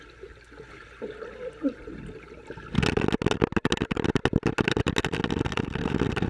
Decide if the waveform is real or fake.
real